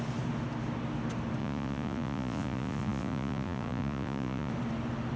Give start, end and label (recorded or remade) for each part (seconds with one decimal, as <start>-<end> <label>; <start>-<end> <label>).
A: 0.0-1.4 recorded; 1.4-4.5 remade; 4.5-5.2 recorded